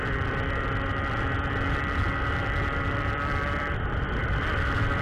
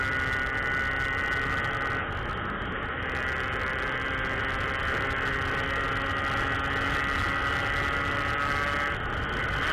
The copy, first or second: first